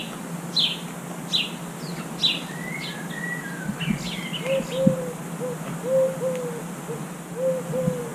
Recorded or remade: recorded